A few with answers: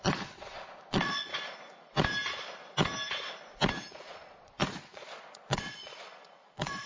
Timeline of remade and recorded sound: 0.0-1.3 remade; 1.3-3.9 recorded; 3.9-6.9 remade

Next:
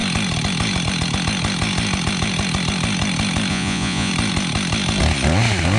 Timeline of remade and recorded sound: 0.0-3.5 recorded; 3.5-4.1 remade; 4.1-5.8 recorded